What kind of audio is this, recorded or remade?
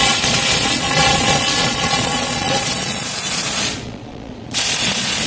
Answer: remade